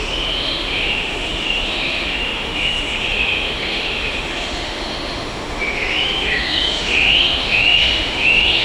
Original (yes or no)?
no